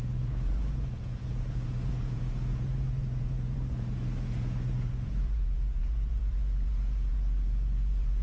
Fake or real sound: fake